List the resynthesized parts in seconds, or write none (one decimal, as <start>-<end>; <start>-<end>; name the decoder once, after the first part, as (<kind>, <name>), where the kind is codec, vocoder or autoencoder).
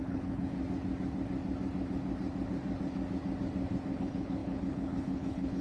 0.0-0.6 (codec, HILCodec); 4.0-5.6